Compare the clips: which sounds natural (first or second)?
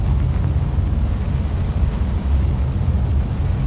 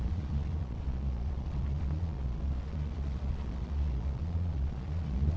first